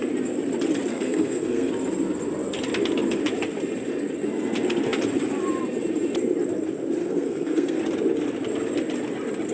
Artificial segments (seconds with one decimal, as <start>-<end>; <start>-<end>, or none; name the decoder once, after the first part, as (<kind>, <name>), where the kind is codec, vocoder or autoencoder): 0.9-1.7 (codec, SNAC); 7.0-7.8